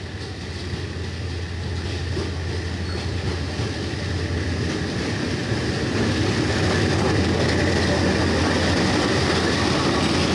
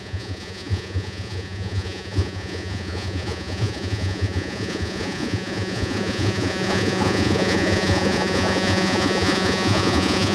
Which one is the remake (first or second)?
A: second